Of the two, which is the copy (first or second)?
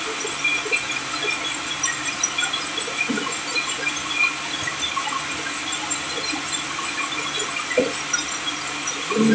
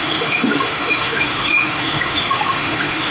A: second